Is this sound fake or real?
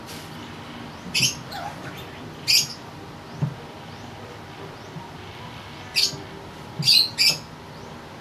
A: real